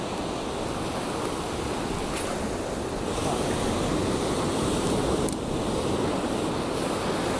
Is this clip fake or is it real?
real